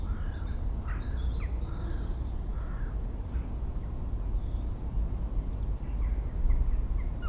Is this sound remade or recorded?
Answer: recorded